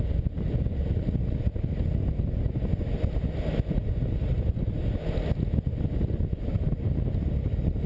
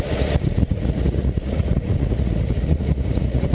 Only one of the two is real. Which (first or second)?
first